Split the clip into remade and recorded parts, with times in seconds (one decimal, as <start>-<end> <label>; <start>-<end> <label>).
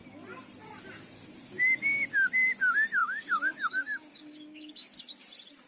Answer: 0.0-3.0 recorded; 3.0-4.7 remade; 4.7-5.7 recorded